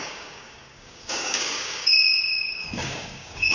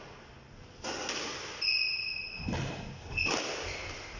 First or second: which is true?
second